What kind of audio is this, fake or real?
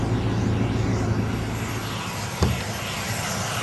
real